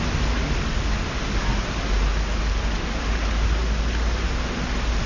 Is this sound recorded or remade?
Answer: recorded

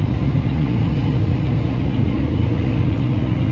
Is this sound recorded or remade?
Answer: remade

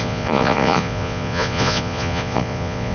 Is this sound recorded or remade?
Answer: remade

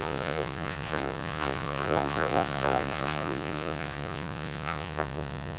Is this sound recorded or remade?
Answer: remade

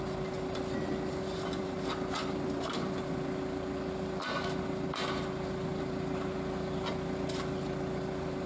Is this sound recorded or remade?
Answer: recorded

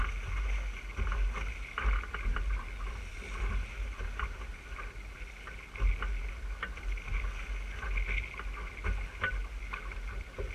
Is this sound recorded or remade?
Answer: recorded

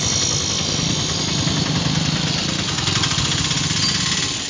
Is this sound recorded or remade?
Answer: recorded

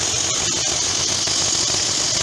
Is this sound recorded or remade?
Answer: recorded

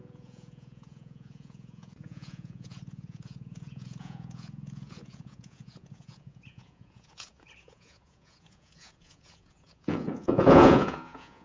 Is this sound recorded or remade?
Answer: remade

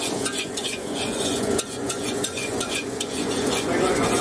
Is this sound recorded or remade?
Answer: remade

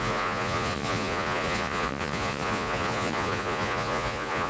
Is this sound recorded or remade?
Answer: remade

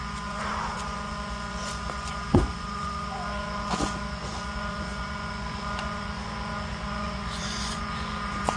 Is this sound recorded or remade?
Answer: remade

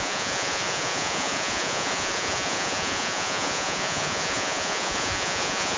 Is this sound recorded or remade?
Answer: remade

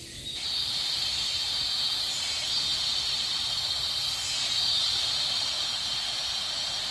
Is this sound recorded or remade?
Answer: recorded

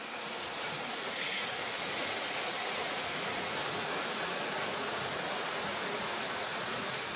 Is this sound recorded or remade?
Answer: remade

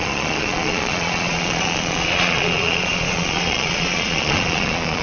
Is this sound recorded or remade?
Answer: remade